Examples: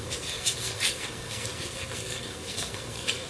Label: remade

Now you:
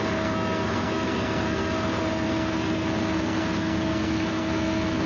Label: remade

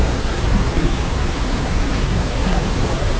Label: remade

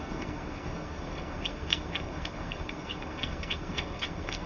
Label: remade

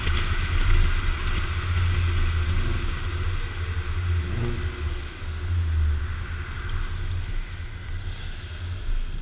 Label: recorded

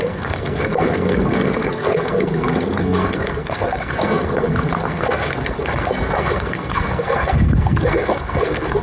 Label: remade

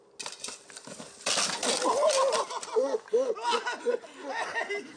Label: recorded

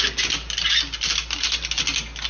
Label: recorded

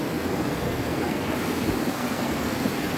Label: remade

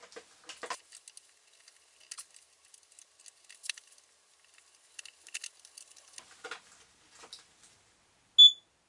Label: recorded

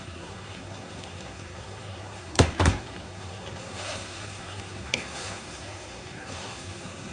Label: remade